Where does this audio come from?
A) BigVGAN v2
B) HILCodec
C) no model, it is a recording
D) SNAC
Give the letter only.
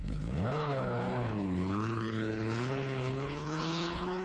B